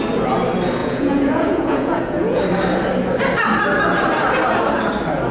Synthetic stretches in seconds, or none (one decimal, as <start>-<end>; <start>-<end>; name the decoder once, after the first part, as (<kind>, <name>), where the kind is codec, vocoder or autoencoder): 0.8-2.4 (vocoder, Vocos)